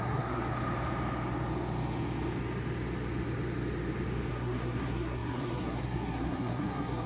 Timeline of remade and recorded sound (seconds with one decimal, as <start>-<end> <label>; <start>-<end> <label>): 0.0-0.5 remade; 0.5-4.3 recorded; 4.3-7.1 remade